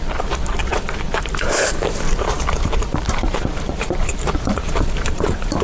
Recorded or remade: remade